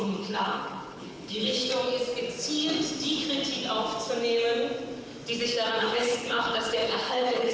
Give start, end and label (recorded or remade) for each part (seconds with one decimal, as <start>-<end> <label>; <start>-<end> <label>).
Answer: 0.0-1.7 remade; 1.7-5.8 recorded; 5.8-7.5 remade